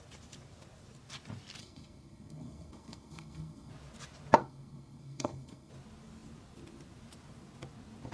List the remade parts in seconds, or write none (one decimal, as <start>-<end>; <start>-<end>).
1.6-3.7; 4.4-5.7